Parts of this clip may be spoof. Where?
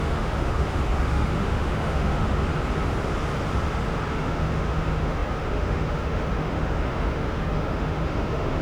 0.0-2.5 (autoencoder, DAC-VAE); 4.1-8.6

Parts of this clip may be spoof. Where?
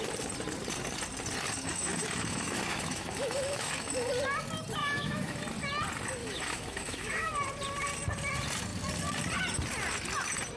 1.6-3.9 (autoencoder, DAC-VAE); 4.8-5.4; 6.2-7.3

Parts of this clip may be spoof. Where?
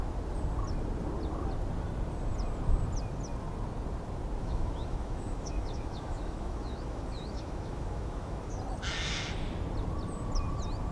4.4-8.5 (autoencoder, DAC-VAE)